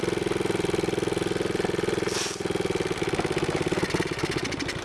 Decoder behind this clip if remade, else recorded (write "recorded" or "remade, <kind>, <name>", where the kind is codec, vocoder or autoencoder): recorded